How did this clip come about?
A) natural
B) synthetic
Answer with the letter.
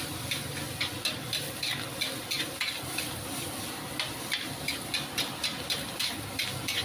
A